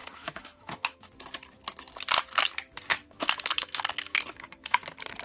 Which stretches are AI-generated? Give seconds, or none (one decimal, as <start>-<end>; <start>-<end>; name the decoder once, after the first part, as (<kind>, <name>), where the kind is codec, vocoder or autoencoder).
0.0-1.1 (autoencoder, DAC-VAE); 2.9-4.8